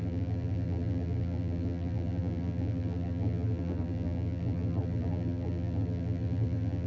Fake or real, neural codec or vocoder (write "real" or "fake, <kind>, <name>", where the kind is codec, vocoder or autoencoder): fake, vocoder, BigVGAN v2